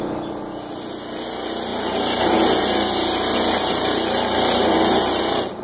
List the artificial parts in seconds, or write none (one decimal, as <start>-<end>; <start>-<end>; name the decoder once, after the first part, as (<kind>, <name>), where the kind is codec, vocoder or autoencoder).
none